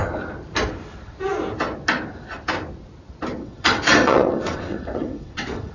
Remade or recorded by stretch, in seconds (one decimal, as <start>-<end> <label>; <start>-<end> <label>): 0.0-3.4 recorded; 3.4-5.7 remade